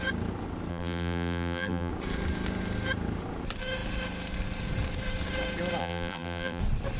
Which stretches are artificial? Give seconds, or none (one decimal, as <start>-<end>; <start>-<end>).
0.7-1.9; 5.8-6.6